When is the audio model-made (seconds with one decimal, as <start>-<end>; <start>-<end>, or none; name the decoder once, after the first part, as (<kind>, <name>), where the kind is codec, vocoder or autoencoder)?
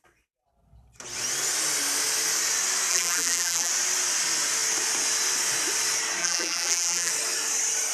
2.9-3.7 (vocoder, BigVGAN v2); 6.2-7.1